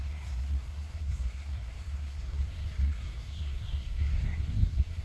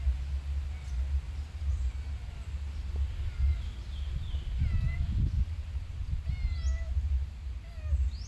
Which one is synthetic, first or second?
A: first